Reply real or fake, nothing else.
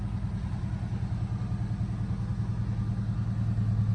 real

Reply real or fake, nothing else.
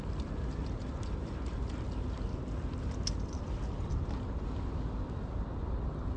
real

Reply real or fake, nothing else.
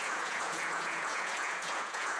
fake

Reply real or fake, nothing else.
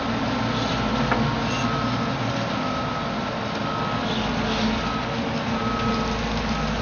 real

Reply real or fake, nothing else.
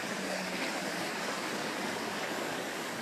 fake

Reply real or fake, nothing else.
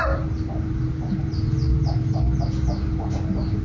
real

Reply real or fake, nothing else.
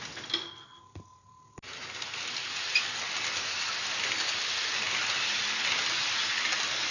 real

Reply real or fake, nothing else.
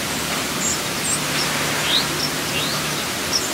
real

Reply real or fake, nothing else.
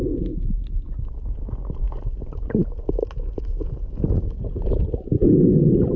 real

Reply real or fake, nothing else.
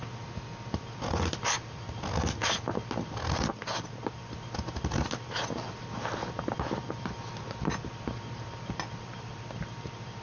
real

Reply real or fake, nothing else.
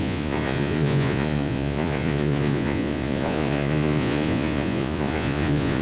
fake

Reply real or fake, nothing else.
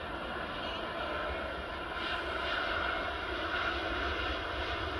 real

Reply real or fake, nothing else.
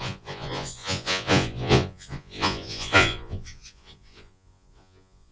fake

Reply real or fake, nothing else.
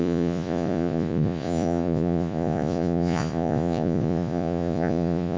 fake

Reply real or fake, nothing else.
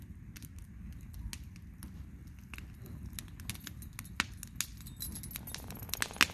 real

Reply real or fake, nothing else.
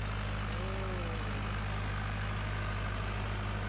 real